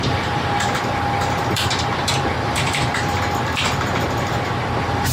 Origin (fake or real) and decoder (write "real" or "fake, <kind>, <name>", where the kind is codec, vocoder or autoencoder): fake, vocoder, BigVGAN v2